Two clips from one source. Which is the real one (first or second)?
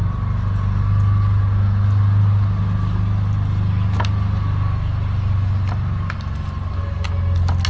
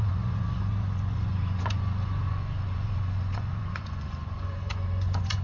first